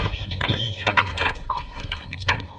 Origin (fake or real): fake